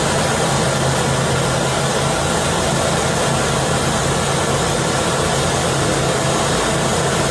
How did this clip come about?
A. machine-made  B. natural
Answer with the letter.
B